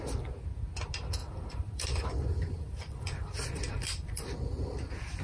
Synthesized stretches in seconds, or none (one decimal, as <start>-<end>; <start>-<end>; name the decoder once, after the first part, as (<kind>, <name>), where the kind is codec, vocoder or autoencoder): 1.2-4.3 (vocoder, BigVGAN v2)